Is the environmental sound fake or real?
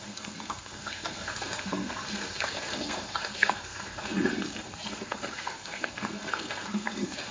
fake